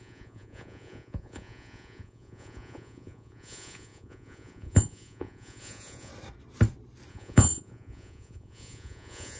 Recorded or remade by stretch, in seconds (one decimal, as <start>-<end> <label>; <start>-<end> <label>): 0.0-6.1 remade; 6.1-7.1 recorded; 7.1-9.4 remade